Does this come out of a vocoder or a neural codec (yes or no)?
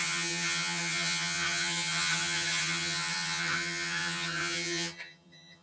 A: yes